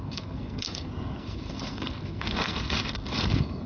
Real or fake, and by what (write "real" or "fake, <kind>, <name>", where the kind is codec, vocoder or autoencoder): fake, codec, SNAC